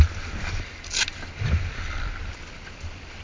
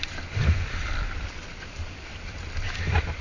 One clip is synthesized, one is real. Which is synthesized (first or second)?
second